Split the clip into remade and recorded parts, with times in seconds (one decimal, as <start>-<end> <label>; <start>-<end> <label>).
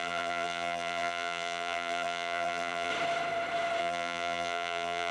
0.0-2.9 remade; 2.9-3.8 recorded; 3.8-5.1 remade